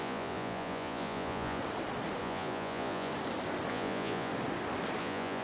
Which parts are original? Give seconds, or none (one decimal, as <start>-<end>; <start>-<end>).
1.6-2.2; 3.1-3.7; 4.3-5.0